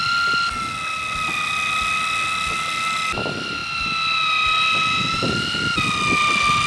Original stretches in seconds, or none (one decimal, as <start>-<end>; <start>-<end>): 0.0-6.7